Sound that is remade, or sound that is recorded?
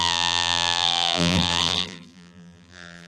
remade